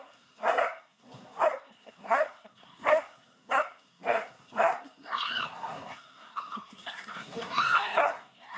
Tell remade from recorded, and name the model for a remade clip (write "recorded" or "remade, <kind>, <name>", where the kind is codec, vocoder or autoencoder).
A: remade, codec, SNAC